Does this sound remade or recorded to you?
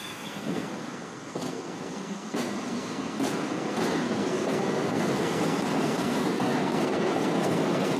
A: remade